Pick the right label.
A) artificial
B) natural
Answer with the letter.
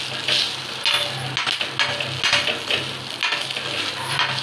B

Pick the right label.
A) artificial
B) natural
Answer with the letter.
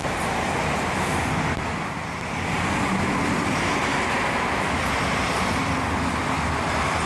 B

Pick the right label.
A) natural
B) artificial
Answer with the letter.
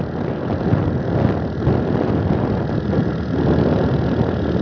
A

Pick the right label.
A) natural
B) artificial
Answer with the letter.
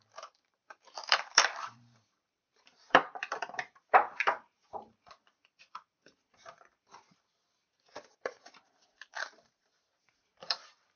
B